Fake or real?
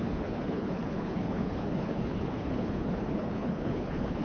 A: fake